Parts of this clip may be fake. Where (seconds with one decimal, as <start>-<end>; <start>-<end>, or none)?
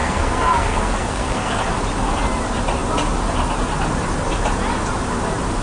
0.0-1.7